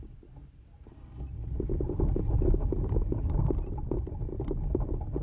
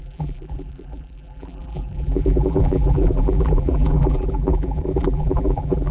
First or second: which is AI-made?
second